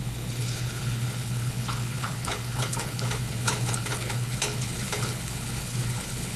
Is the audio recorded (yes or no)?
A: no